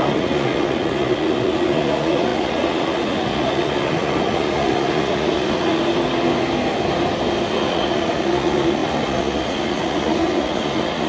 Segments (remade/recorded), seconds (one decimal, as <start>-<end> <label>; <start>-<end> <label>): 0.0-5.8 remade; 5.8-7.5 recorded; 7.5-11.1 remade